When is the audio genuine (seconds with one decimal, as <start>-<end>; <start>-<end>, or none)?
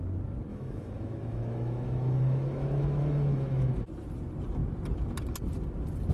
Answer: 0.0-0.5; 3.7-6.1